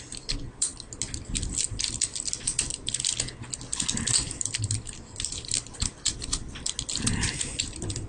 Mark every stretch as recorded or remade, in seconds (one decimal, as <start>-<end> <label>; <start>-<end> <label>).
0.0-8.1 recorded